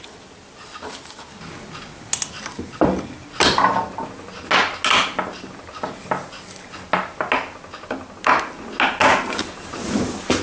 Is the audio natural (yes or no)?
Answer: yes